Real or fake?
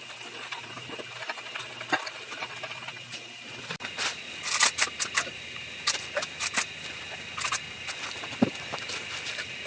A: real